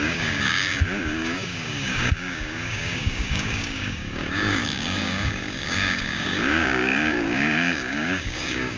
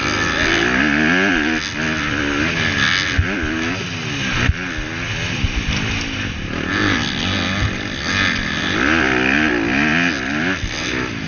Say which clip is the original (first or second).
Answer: second